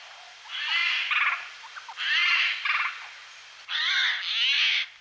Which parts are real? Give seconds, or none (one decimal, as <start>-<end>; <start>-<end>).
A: 0.0-5.0